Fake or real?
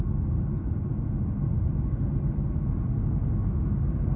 real